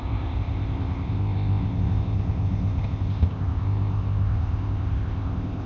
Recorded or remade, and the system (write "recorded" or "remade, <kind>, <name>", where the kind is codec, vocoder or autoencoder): remade, codec, ZipCodec